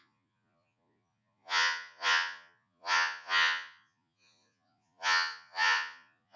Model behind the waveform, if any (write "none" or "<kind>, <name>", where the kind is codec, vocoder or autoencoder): vocoder, Vocos